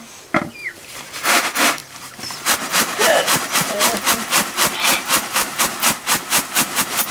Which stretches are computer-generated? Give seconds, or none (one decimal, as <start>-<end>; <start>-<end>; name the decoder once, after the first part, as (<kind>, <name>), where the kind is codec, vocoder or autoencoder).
1.8-5.6 (vocoder, BigVGAN v2)